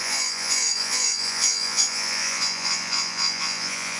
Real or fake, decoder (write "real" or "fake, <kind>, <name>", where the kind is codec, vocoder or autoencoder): fake, vocoder, Vocos